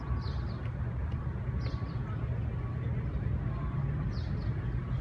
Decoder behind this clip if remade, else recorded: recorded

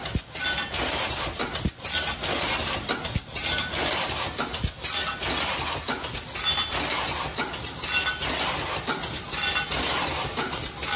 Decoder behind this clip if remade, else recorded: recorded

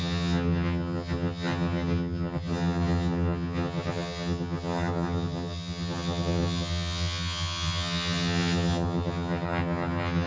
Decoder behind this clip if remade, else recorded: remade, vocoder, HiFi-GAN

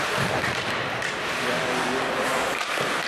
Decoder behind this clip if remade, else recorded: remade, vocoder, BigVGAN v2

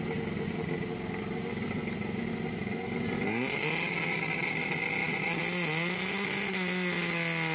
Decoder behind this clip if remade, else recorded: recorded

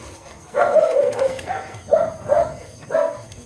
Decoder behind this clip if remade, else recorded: remade, codec, SNAC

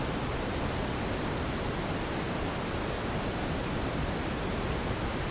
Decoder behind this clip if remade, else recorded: recorded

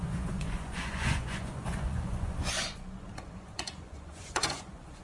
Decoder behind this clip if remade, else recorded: remade, vocoder, Vocos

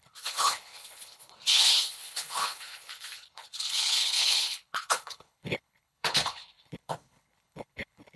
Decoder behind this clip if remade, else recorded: remade, codec, HILCodec